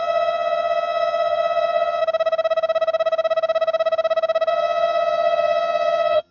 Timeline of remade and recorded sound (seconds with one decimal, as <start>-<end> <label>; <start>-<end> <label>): 0.0-2.0 remade; 2.0-4.5 recorded; 4.5-6.3 remade